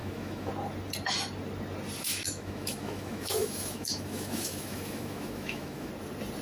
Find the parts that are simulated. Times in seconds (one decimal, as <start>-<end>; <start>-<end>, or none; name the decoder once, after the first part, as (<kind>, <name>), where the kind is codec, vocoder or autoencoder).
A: 0.0-0.5 (autoencoder, DAC-VAE); 2.1-5.9